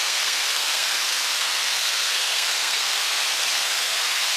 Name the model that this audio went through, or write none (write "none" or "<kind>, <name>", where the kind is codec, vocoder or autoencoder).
codec, SNAC